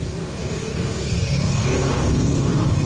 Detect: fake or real fake